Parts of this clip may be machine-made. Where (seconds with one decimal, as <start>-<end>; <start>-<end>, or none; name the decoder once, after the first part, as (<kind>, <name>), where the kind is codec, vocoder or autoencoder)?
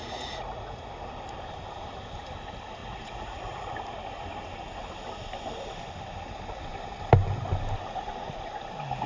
0.0-0.9 (vocoder, Vocos); 2.8-3.7